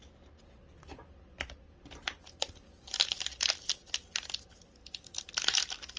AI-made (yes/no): no